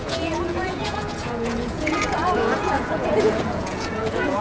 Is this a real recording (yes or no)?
no